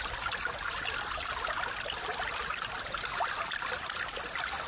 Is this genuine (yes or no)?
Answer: yes